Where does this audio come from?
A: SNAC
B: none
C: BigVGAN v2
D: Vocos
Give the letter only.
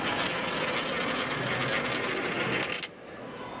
B